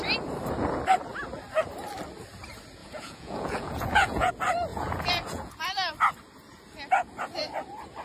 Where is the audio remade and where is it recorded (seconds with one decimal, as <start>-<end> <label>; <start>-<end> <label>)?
0.0-2.8 recorded; 2.8-4.3 remade; 4.3-4.7 recorded; 4.7-5.5 remade; 5.5-8.0 recorded